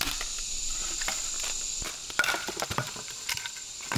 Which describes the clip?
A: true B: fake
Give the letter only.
A